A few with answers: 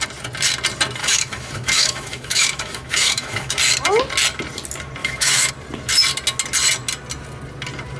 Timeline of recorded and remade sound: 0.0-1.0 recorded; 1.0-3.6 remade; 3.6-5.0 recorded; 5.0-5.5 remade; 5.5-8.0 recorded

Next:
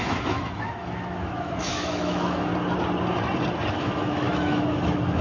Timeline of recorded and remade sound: 0.0-2.5 remade; 2.5-3.7 recorded; 3.7-5.2 remade